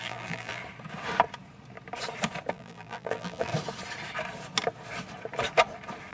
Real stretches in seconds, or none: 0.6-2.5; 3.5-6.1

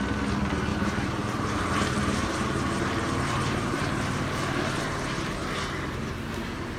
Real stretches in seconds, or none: 0.0-0.7; 4.8-6.8